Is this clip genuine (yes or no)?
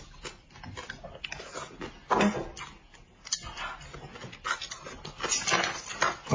yes